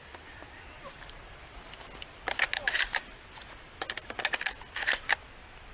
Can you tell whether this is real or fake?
real